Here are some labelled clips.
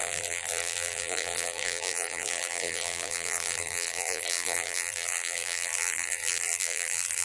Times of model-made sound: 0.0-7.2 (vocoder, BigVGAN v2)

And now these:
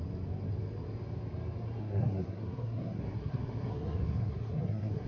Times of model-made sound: 1.8-5.1 (codec, SNAC)

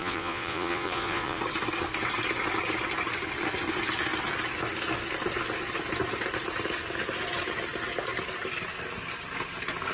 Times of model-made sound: 0.0-1.4 (vocoder, Vocos)

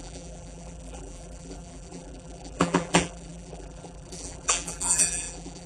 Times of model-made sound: 0.0-5.7 (vocoder, BigVGAN v2)

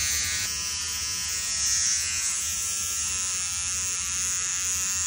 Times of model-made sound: 0.0-3.1 (vocoder, Vocos)

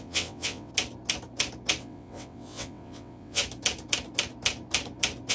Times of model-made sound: 0.0-0.7 (vocoder, WaveNeXt); 1.8-3.4

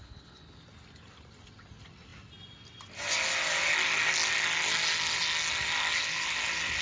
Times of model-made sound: 0.0-0.6 (codec, HILCodec)

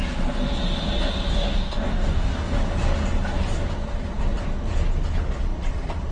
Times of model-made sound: 1.3-2.6 (codec, DAC)